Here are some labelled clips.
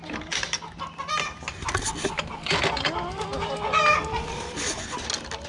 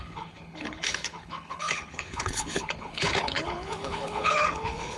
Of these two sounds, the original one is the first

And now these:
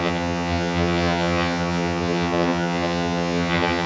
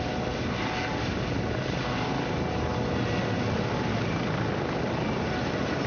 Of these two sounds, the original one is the second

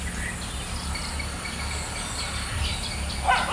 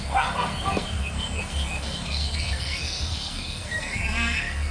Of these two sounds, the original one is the first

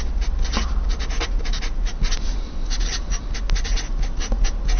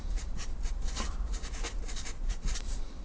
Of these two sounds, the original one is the first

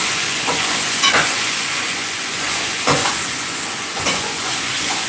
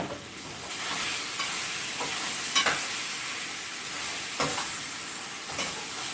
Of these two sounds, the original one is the second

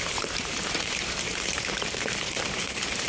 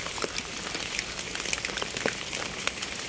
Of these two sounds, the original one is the second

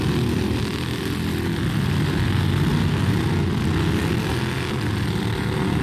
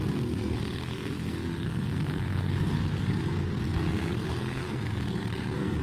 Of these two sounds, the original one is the first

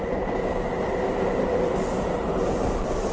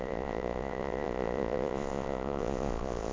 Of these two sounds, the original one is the first